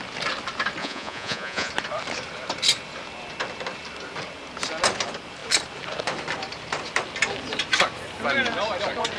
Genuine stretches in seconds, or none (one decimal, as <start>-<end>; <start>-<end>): 0.0-0.8; 1.7-9.2